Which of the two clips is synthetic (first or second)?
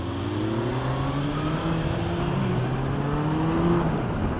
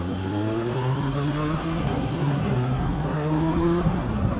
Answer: second